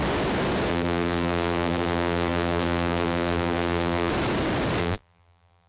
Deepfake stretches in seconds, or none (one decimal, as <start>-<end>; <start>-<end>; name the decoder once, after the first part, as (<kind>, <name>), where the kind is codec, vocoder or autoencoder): 0.7-4.1 (vocoder, BigVGAN v2); 4.8-5.7